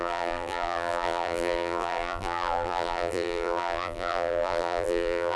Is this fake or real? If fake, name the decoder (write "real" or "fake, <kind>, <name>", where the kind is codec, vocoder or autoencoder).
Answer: fake, vocoder, BigVGAN v2